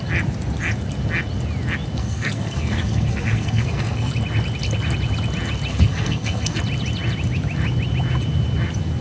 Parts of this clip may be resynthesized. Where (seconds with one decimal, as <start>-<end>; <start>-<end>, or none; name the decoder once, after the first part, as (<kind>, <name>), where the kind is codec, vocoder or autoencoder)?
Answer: 2.0-4.1 (codec, SNAC); 5.7-6.6